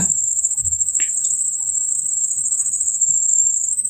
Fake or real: fake